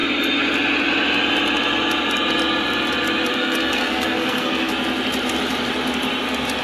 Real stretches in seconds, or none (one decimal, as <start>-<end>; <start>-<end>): 0.0-3.3; 4.7-6.6